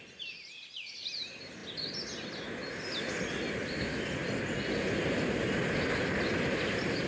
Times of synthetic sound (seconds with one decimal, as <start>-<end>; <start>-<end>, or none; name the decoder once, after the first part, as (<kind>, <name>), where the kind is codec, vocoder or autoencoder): none